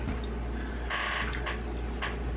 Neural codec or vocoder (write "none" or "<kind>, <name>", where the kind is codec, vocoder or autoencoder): none